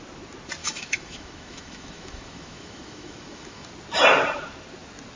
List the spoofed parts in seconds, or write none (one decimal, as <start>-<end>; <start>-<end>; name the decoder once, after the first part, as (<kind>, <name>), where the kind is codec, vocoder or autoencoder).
0.6-3.7 (autoencoder, DAC-VAE)